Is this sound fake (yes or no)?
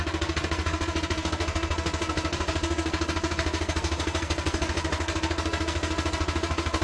yes